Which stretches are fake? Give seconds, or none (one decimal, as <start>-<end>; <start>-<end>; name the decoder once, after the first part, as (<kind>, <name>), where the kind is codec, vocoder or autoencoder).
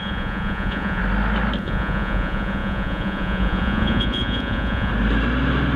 0.0-1.0 (vocoder, Vocos); 1.6-4.9